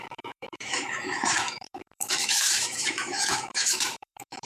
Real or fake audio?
fake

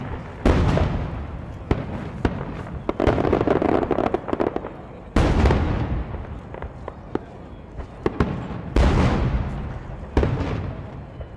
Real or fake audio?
real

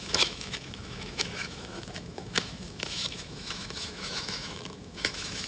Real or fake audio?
fake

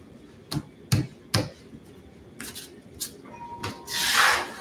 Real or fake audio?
real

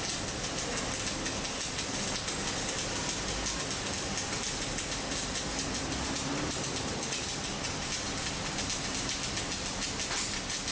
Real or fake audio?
real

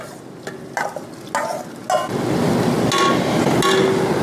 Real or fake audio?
real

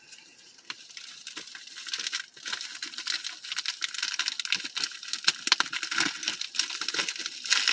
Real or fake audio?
real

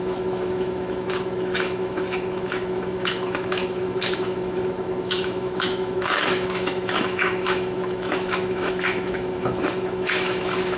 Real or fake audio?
fake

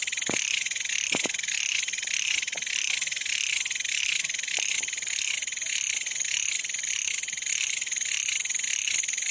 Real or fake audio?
real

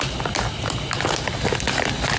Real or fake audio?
real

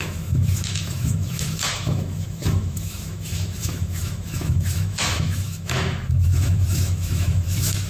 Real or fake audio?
fake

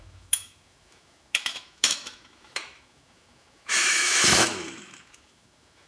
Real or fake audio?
fake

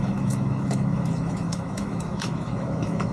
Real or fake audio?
fake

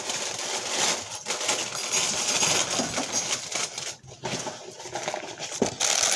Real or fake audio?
real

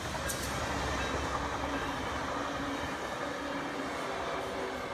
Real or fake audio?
real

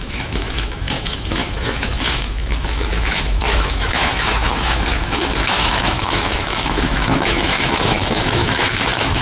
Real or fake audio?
fake